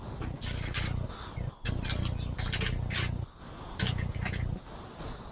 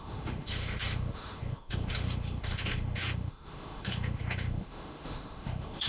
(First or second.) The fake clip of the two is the second